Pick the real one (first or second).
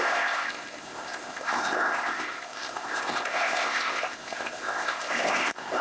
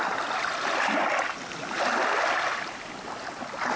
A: second